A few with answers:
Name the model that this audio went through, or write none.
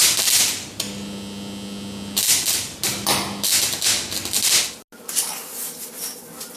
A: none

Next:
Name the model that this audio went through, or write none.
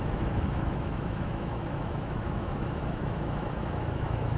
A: autoencoder, DAC-VAE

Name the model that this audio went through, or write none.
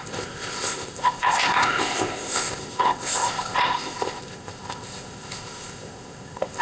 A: codec, ZipCodec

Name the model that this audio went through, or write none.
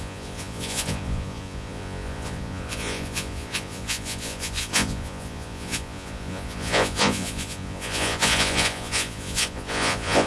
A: vocoder, Vocos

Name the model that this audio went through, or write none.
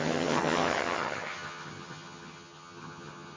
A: vocoder, HiFi-GAN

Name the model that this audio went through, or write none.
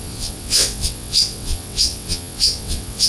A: vocoder, WaveNeXt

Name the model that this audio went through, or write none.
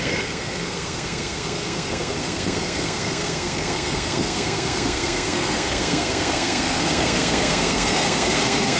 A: codec, SNAC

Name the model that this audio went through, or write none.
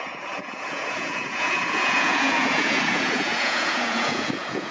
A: vocoder, Vocos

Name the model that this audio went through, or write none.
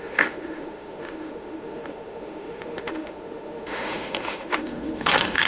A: autoencoder, DAC-VAE